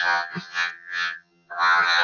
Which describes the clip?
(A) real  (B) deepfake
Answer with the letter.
B